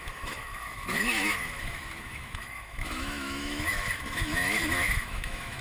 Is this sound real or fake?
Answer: fake